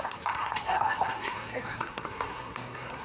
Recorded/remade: remade